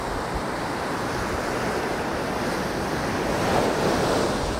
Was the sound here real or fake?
real